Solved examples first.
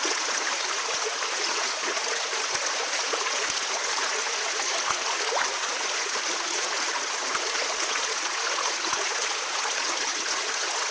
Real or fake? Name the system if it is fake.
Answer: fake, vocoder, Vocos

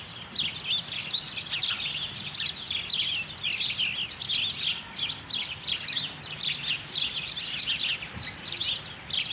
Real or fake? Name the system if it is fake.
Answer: real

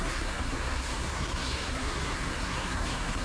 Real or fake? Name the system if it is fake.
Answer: fake, codec, SNAC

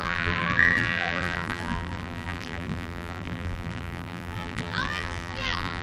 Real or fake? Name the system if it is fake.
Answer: fake, vocoder, BigVGAN v2